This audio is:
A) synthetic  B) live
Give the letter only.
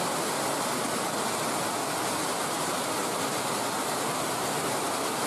B